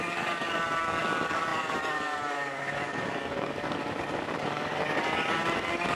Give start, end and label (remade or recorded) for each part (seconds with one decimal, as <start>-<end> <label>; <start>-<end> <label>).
0.0-6.0 remade

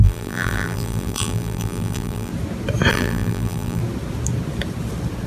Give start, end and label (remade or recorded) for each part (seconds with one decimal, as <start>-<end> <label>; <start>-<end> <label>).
0.0-2.3 remade; 2.3-2.9 recorded; 2.9-3.8 remade; 3.8-5.3 recorded

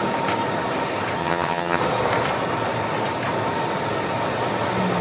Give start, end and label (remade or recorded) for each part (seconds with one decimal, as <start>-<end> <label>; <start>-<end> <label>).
0.0-1.2 recorded; 1.2-1.8 remade; 1.8-5.0 recorded

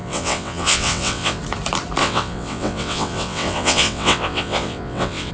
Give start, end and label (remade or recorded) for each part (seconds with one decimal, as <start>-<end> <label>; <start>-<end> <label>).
0.0-1.4 remade; 1.4-2.0 recorded; 2.0-5.3 remade

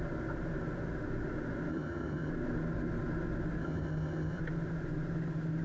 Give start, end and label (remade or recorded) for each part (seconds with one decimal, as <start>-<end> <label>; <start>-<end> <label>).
0.0-1.7 recorded; 1.7-2.3 remade; 2.3-3.6 recorded; 3.6-4.4 remade; 4.4-5.6 recorded

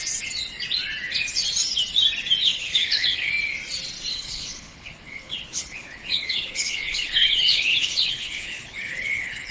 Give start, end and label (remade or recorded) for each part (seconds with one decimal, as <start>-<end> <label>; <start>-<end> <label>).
0.0-2.4 recorded; 2.4-3.3 remade; 3.3-4.1 recorded; 4.1-9.5 remade